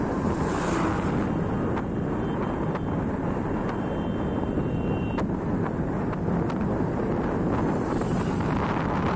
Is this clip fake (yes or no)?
no